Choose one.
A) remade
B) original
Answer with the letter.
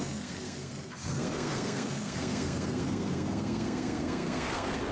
A